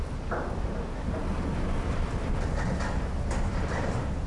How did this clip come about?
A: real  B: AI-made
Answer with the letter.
A